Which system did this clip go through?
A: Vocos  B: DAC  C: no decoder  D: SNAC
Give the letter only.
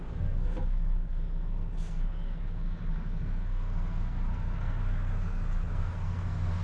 D